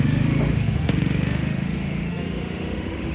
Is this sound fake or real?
fake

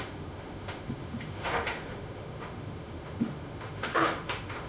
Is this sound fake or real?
fake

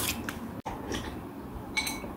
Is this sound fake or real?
real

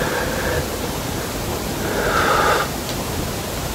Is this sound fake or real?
real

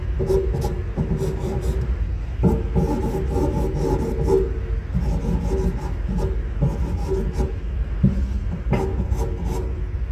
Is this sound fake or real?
real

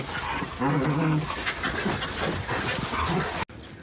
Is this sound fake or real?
real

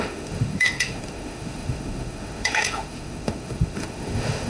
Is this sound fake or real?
fake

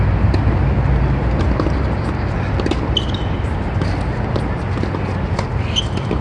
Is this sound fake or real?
real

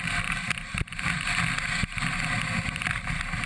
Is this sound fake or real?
real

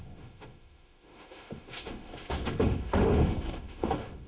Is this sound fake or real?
fake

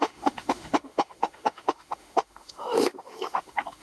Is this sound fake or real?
fake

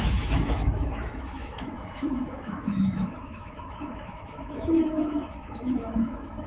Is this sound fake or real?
fake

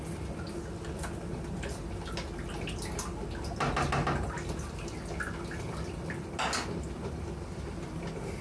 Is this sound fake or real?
real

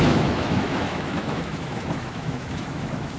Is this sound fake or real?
fake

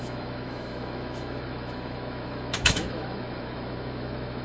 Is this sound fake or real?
fake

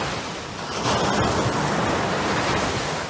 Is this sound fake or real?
real